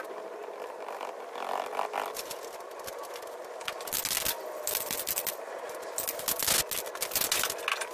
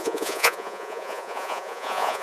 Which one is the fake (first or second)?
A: second